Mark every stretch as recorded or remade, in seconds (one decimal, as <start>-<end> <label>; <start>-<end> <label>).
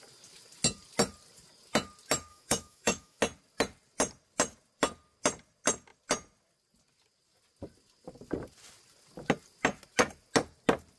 0.0-2.3 recorded; 2.3-3.2 remade; 3.2-11.0 recorded